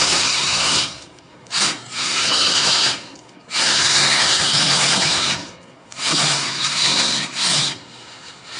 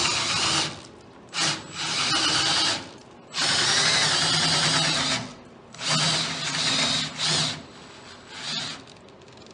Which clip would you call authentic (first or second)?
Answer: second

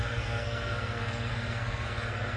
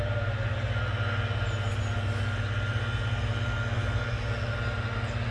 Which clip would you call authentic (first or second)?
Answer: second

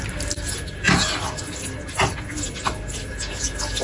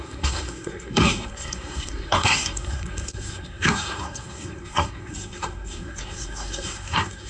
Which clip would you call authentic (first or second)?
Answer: first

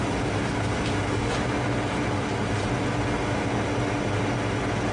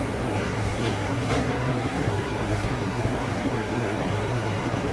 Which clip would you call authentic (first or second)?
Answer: first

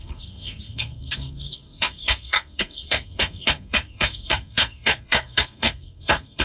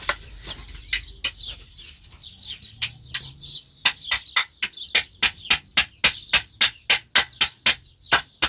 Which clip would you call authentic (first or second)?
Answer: second